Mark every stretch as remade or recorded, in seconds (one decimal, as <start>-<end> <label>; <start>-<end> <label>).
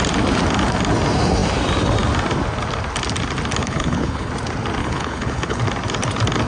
0.0-3.6 recorded; 3.6-4.3 remade; 4.3-4.8 recorded; 4.8-5.6 remade; 5.6-6.5 recorded